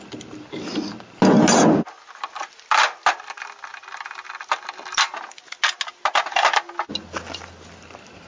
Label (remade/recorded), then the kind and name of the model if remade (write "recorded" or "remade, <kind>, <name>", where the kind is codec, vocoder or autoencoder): recorded